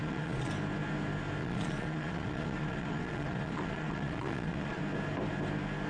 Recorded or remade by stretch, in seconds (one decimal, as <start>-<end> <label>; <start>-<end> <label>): 0.0-0.5 remade; 0.5-1.4 recorded; 1.4-4.8 remade; 4.8-5.9 recorded